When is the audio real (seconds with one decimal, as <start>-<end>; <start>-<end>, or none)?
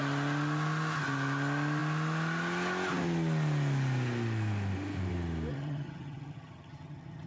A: 0.0-5.5